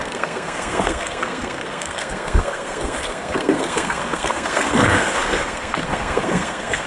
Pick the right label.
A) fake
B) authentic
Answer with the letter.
A